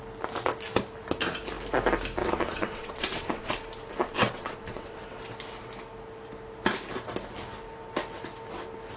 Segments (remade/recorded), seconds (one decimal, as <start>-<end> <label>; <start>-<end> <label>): 0.0-2.2 recorded; 2.2-3.5 remade; 3.5-4.0 recorded; 4.0-5.0 remade; 5.0-9.0 recorded